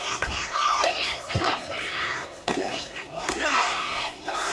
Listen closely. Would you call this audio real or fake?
fake